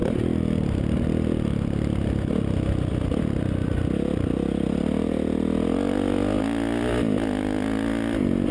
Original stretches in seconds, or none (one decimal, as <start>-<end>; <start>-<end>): 0.0-8.5